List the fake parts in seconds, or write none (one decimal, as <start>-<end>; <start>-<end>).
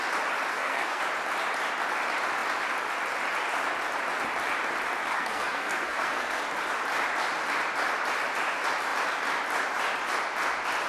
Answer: 0.5-1.0; 5.1-6.4